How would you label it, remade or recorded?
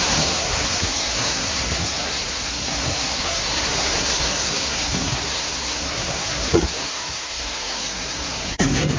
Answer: remade